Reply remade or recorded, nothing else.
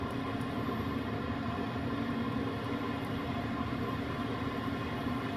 remade